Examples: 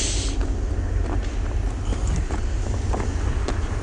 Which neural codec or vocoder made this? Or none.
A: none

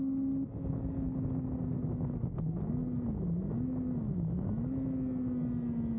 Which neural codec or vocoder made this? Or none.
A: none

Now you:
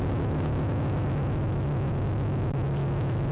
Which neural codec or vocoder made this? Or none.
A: none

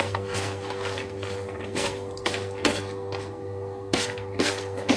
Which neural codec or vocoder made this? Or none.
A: codec, SNAC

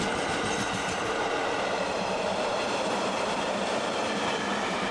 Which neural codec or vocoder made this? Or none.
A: none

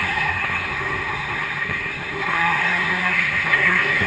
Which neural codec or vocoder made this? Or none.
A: codec, SNAC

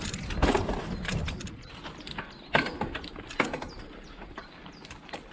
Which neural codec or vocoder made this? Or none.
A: none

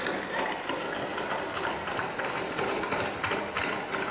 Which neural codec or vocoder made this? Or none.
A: none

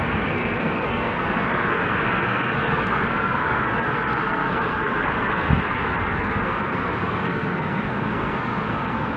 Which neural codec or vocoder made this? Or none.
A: codec, SNAC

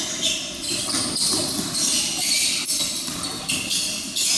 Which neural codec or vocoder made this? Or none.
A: none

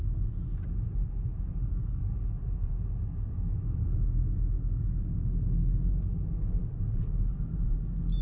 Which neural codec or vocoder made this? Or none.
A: none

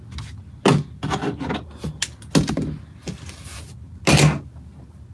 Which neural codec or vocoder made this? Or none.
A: none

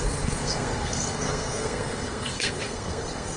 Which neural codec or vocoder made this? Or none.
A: codec, SNAC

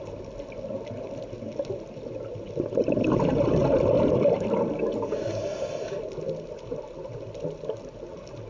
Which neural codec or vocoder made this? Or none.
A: none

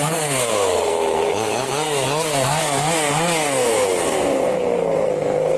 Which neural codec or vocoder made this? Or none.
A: codec, SNAC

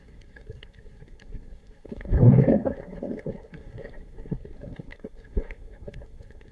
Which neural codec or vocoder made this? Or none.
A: codec, SNAC